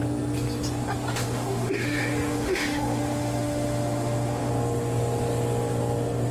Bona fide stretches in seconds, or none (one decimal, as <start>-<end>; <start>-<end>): 0.0-1.1; 4.5-6.3